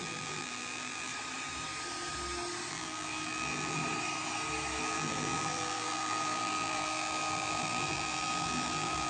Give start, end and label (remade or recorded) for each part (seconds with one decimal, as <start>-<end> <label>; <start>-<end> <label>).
0.0-1.1 remade; 1.1-2.7 recorded; 2.7-3.8 remade; 3.8-4.8 recorded; 4.8-9.1 remade